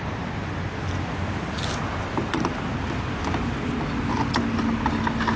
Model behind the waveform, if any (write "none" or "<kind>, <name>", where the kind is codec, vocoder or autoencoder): none